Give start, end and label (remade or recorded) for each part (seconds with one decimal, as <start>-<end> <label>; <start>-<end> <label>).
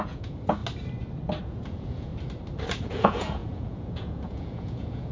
0.0-0.6 remade; 0.6-1.4 recorded; 1.4-2.1 remade; 2.1-2.8 recorded; 2.8-5.1 remade